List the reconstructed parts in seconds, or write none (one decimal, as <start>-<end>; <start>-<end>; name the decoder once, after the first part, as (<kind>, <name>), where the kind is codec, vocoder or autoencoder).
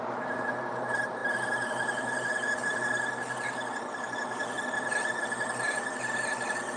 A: none